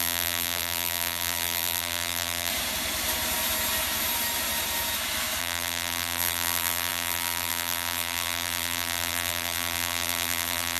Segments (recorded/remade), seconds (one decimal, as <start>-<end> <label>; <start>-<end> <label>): 0.0-2.5 remade; 2.5-5.4 recorded; 5.4-10.8 remade